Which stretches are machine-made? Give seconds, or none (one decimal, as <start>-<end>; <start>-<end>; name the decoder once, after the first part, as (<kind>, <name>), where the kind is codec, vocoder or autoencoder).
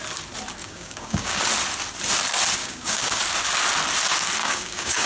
0.6-1.4 (codec, DAC); 2.6-3.2; 4.4-5.1